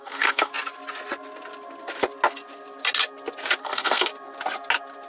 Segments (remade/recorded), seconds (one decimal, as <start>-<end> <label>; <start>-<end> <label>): 0.0-0.5 remade; 0.5-3.6 recorded; 3.6-4.1 remade; 4.1-5.1 recorded